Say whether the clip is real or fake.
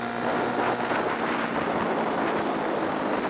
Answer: real